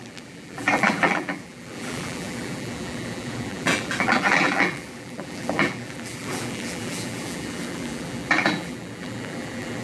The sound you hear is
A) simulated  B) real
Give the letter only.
A